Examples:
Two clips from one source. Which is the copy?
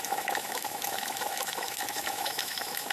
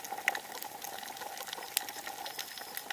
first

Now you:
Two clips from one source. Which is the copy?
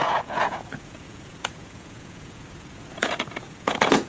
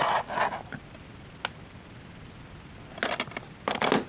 first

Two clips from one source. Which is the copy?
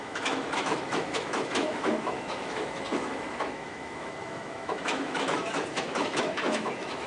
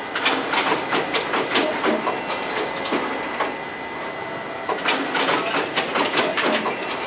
first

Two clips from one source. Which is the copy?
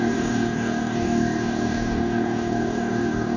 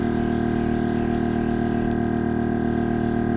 first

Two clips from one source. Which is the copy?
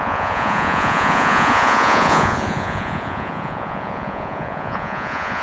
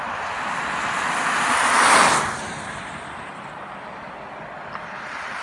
first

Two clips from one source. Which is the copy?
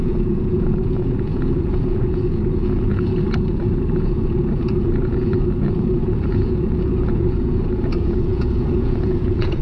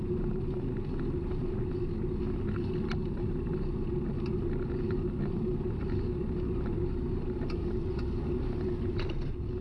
first